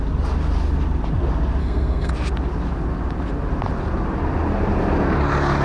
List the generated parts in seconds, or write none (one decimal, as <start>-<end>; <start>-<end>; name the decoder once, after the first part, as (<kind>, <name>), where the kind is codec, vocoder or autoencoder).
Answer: 1.6-2.1 (codec, SNAC)